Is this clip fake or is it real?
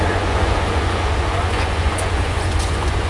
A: fake